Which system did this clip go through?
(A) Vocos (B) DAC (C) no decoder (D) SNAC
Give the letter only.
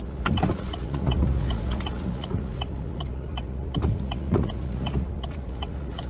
A